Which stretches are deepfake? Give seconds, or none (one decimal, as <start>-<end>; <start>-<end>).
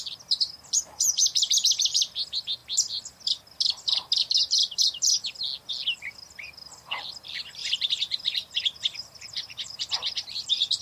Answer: 7.6-9.9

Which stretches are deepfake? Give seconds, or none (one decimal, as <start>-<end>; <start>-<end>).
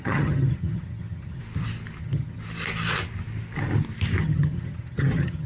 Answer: 0.0-1.4; 2.0-2.4; 4.2-5.5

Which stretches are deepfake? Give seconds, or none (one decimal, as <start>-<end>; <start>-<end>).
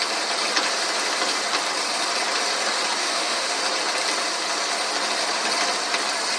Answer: 3.0-3.6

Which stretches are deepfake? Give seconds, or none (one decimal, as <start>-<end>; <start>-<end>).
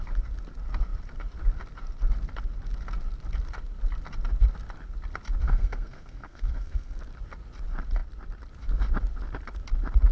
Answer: 5.4-7.0